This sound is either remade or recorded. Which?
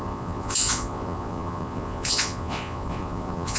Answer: remade